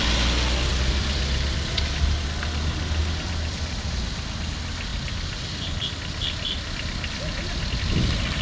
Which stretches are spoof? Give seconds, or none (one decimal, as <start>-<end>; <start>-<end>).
0.7-2.2; 3.0-3.6; 4.9-5.7

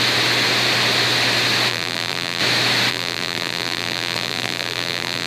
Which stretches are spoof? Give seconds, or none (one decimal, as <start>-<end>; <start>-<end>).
1.7-2.4; 2.9-5.3

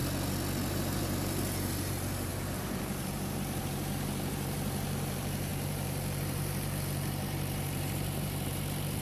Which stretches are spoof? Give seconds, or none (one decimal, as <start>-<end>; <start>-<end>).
0.7-9.0